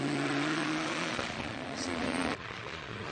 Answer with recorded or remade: remade